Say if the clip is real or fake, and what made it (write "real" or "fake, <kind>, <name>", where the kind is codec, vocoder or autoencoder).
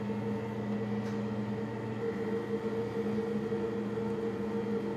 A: real